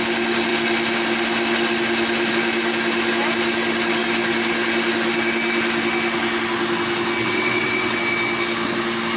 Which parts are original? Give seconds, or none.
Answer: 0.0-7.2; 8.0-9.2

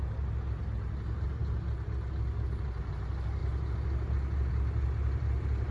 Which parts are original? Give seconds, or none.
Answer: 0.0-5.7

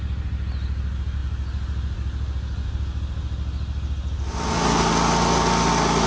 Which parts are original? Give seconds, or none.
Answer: 0.0-6.1